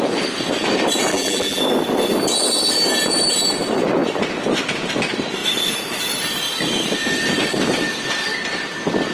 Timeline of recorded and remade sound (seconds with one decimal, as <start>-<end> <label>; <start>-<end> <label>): 0.0-1.1 recorded; 1.1-1.6 remade; 1.6-9.1 recorded